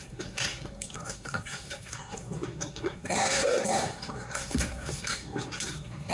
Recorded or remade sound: remade